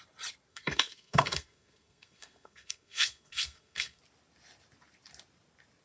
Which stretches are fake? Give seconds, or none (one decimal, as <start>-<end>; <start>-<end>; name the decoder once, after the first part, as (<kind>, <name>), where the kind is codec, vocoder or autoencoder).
0.5-4.0 (codec, SNAC)